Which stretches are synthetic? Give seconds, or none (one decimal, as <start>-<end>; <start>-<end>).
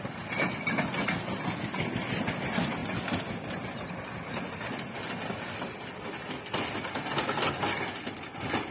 none